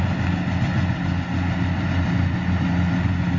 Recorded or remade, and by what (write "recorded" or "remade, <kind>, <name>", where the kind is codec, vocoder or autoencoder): recorded